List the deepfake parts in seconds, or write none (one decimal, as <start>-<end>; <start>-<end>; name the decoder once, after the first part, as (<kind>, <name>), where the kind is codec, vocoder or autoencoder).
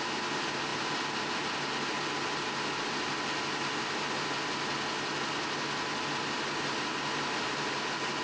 none